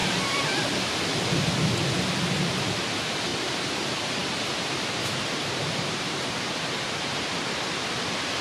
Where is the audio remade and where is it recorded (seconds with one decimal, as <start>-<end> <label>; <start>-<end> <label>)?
0.0-3.3 recorded; 3.3-6.3 remade; 6.3-8.4 recorded